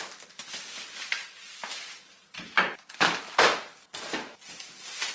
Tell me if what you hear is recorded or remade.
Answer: recorded